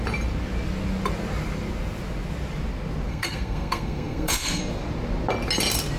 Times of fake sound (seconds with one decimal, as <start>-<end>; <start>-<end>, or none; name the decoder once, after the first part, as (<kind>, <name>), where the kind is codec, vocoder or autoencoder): 3.1-4.6 (codec, SNAC)